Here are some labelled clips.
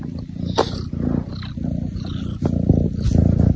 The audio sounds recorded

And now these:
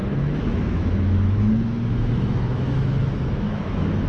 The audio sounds remade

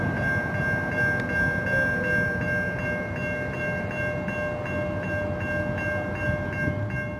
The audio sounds recorded